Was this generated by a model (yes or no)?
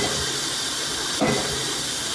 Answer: no